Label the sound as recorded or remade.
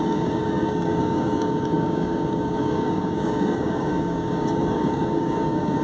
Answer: remade